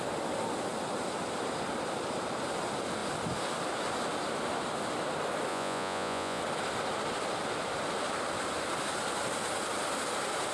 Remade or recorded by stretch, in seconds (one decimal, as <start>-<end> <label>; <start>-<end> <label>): 0.0-5.5 recorded; 5.5-6.4 remade; 6.4-10.5 recorded